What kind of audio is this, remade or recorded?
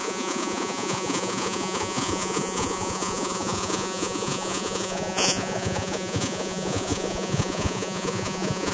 remade